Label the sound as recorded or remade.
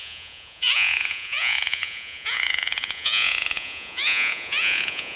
remade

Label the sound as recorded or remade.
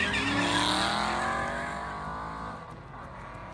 recorded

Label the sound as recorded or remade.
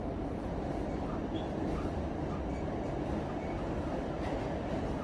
recorded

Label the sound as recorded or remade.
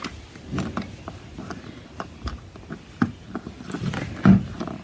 recorded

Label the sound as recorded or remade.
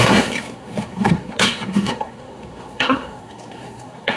remade